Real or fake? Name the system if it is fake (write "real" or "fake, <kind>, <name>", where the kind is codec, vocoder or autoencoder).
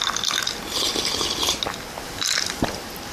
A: real